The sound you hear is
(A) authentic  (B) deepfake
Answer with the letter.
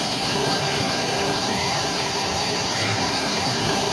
B